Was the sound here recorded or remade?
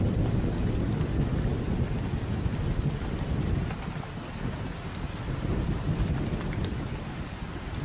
recorded